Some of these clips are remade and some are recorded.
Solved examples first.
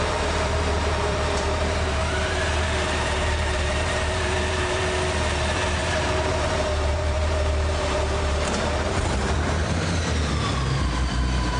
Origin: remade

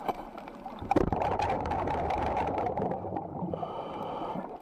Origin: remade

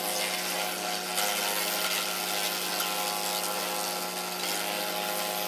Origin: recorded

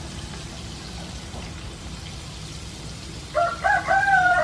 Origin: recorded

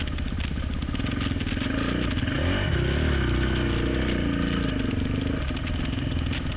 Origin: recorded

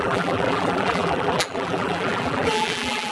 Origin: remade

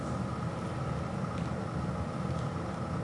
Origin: recorded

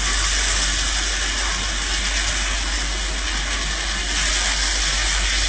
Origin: recorded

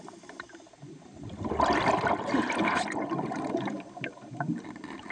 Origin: remade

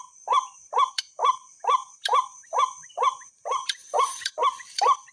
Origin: remade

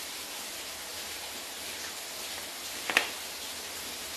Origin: recorded